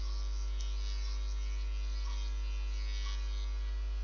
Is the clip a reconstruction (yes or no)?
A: no